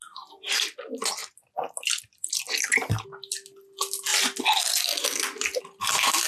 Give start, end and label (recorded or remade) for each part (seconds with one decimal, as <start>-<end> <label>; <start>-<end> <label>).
0.0-6.3 recorded